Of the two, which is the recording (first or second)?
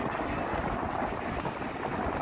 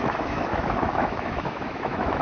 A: first